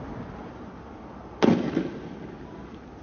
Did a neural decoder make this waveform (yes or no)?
no